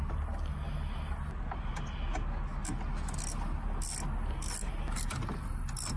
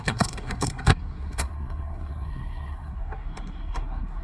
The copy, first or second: second